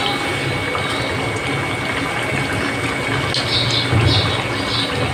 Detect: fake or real real